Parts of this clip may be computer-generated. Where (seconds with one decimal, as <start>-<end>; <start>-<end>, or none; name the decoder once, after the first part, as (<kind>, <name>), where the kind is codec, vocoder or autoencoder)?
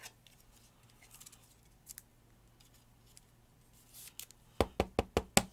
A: none